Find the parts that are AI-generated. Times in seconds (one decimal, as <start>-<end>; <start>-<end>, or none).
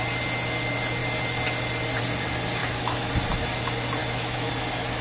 2.6-3.1; 4.0-4.5